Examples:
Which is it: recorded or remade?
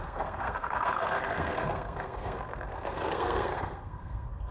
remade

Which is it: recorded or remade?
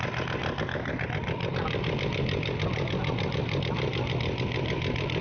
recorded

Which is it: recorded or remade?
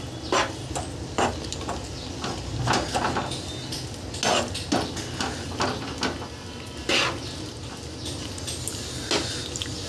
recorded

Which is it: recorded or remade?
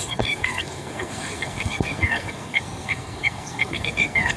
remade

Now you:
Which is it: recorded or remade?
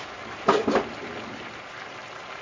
recorded